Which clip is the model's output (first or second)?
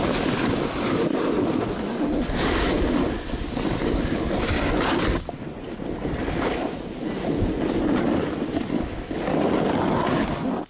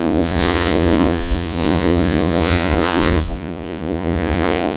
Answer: second